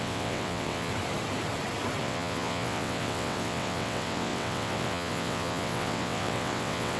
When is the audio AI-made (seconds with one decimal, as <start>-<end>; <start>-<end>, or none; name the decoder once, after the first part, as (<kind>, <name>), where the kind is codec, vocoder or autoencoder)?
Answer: 0.0-0.9 (vocoder, WaveNeXt); 2.0-7.0